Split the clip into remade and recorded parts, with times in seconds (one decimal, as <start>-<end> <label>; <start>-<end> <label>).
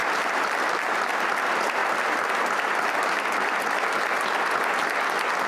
0.0-1.0 remade; 1.0-5.5 recorded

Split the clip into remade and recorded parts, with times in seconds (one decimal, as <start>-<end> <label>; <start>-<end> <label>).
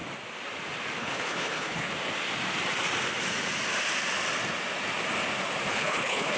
0.0-1.0 recorded; 1.0-1.9 remade; 1.9-5.7 recorded; 5.7-6.4 remade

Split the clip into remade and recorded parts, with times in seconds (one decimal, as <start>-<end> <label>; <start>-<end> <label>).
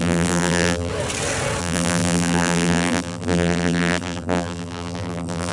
0.0-0.9 remade; 0.9-1.6 recorded; 1.6-5.5 remade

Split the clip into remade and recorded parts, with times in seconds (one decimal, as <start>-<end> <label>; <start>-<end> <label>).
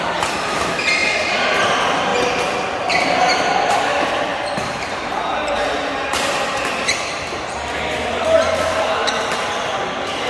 0.0-1.0 recorded; 1.0-1.7 remade; 1.7-4.3 recorded; 4.3-7.4 remade; 7.4-10.3 recorded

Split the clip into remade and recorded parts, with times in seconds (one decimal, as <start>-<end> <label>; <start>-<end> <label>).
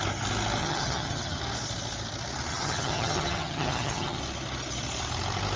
0.0-0.6 recorded; 0.6-1.4 remade; 1.4-2.5 recorded; 2.5-4.2 remade; 4.2-5.6 recorded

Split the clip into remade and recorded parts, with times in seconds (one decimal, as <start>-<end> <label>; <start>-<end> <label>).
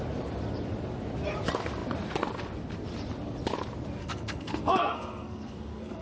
0.0-4.0 recorded; 4.0-6.0 remade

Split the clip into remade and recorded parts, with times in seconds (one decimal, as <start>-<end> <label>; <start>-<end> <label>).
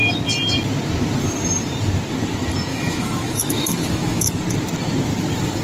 0.0-2.7 recorded; 2.7-4.4 remade; 4.4-5.6 recorded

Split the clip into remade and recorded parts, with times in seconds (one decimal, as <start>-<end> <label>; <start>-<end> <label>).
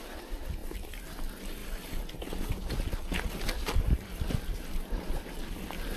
0.0-6.0 recorded